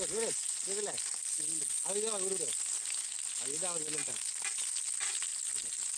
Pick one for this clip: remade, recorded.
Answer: recorded